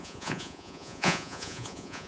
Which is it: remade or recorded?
remade